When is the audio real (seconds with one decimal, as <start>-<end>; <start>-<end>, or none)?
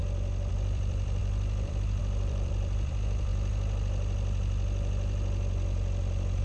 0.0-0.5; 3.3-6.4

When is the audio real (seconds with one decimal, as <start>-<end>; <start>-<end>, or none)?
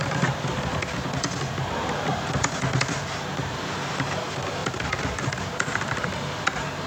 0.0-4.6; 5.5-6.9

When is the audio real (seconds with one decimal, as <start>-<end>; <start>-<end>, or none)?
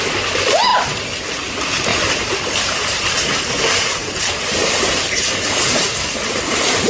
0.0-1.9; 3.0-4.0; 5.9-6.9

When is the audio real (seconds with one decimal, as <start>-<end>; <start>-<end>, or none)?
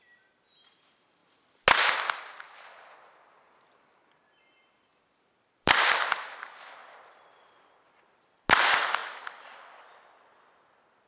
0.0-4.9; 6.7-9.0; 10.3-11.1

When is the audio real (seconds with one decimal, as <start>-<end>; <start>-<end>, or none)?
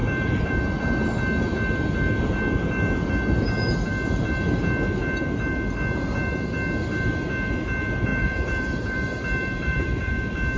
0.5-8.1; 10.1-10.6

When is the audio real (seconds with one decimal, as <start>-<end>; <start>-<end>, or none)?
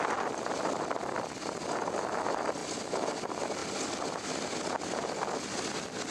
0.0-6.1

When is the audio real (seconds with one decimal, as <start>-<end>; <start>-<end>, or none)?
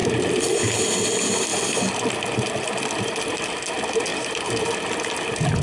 0.6-4.1; 4.7-5.6